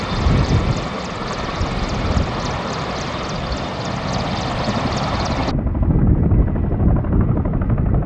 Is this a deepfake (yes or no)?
no